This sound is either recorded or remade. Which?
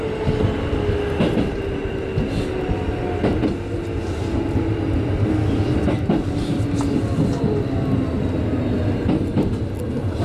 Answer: recorded